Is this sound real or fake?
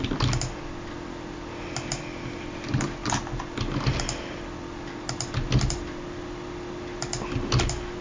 real